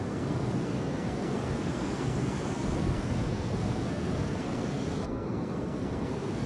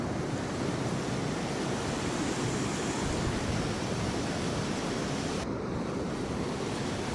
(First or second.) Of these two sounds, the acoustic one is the second